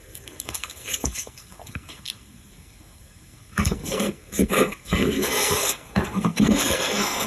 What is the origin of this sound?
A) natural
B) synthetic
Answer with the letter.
B